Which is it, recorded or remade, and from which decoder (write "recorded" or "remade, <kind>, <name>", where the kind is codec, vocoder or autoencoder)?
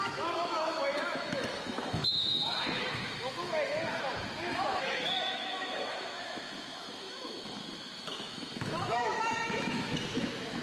remade, autoencoder, DAC-VAE